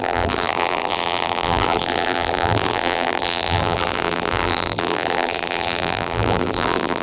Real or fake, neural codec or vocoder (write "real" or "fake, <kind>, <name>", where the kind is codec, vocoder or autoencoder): fake, vocoder, BigVGAN v2